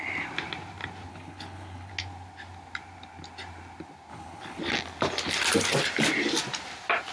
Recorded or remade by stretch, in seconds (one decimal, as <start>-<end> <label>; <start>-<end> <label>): 0.0-1.1 recorded; 1.1-1.9 remade; 1.9-4.1 recorded; 4.1-4.6 remade; 4.6-7.1 recorded